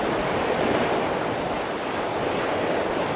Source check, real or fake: real